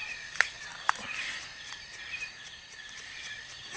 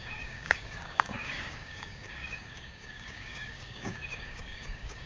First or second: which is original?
first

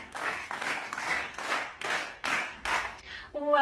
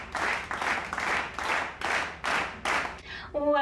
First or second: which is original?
second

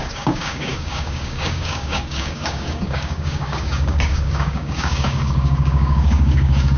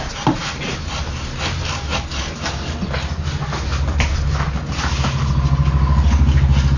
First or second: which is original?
second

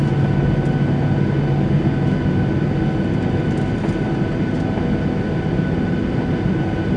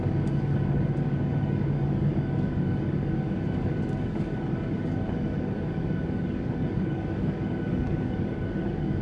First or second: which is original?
first